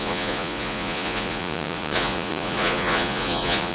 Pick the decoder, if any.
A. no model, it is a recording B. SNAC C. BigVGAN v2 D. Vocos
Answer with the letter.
D